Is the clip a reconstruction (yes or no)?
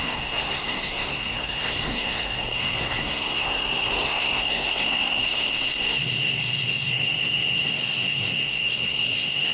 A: yes